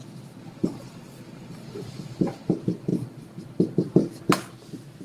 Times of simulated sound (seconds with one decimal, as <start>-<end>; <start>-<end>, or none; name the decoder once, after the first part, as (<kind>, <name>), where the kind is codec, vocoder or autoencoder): 0.6-2.3 (vocoder, BigVGAN v2); 2.9-4.2